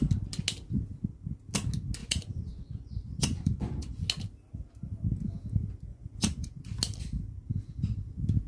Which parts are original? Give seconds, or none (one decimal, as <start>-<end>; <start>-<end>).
0.0-2.0; 4.0-5.9; 6.6-8.5